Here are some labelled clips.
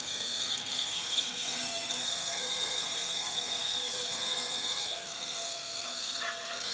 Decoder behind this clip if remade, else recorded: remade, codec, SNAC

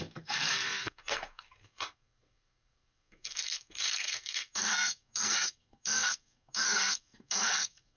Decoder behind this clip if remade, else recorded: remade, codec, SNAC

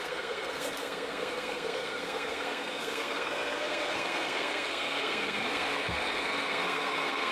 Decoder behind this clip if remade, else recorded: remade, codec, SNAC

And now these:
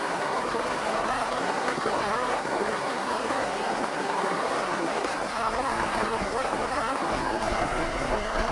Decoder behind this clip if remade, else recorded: remade, codec, SNAC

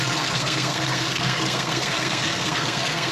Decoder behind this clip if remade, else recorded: remade, codec, SNAC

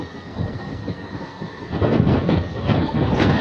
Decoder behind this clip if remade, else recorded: remade, codec, SNAC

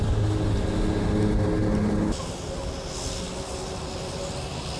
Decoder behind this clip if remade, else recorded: recorded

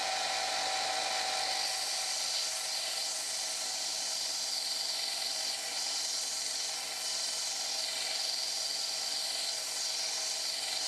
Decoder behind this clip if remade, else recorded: recorded